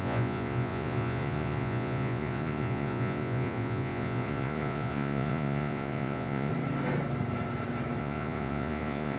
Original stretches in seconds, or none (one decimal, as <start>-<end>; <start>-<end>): 6.5-8.0